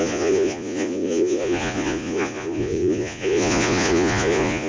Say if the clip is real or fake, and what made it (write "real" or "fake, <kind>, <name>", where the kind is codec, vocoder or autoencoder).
fake, vocoder, Vocos